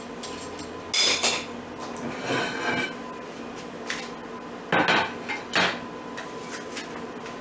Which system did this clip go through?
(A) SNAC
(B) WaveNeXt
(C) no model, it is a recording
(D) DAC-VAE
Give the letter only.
C